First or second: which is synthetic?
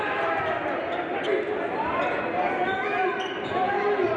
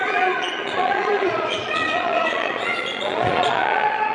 second